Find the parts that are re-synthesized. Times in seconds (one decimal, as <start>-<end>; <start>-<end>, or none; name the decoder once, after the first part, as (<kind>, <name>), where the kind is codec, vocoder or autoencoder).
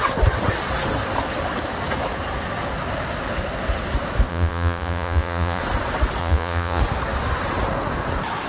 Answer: 4.3-5.6 (vocoder, Vocos); 6.2-6.8